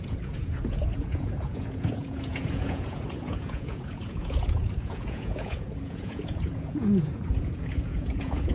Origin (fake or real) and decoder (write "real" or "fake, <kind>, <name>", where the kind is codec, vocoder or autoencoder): fake, vocoder, Vocos